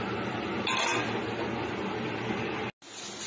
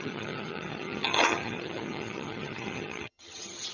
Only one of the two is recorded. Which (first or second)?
first